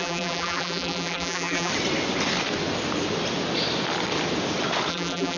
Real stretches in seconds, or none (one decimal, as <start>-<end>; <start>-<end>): 1.7-4.9